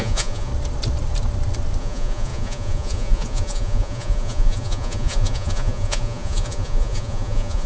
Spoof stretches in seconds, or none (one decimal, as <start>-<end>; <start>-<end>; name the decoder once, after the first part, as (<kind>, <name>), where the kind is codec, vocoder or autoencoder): 0.0-0.5 (vocoder, Vocos); 1.8-7.7